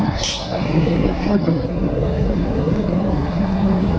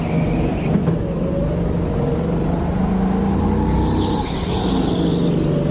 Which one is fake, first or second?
first